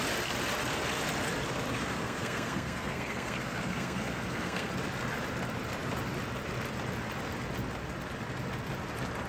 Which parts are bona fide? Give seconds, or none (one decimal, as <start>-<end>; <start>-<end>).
0.0-1.8; 4.7-9.3